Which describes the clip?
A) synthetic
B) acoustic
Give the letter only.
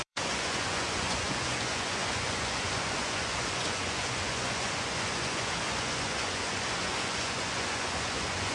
A